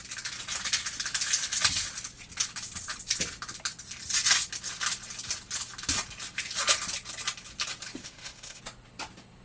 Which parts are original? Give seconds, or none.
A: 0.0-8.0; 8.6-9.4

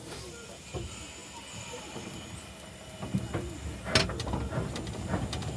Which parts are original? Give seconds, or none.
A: 0.0-5.6

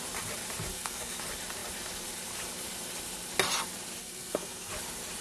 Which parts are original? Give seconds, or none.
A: 0.0-0.7; 1.2-4.0; 4.7-5.2

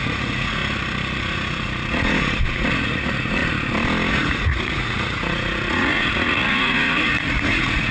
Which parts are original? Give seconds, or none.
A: 0.6-1.2; 3.4-4.1

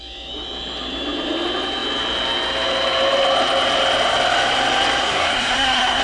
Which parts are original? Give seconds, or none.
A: 0.0-5.0

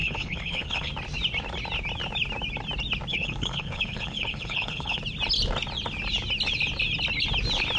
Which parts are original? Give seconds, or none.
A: 0.9-3.1; 5.0-7.8

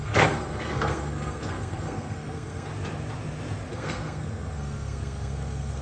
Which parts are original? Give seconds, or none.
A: 2.7-3.7

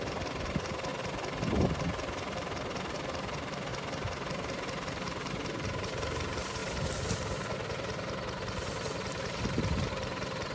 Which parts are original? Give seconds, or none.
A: 0.9-1.5; 3.7-4.3; 6.6-7.1